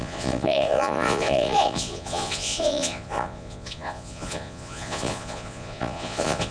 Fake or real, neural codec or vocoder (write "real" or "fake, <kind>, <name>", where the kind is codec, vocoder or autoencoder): fake, vocoder, Vocos